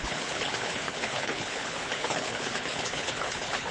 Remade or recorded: remade